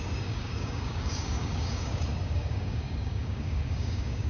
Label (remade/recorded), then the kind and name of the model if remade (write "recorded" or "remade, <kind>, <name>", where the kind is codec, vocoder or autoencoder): remade, codec, DAC